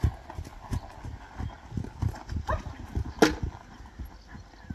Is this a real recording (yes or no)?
yes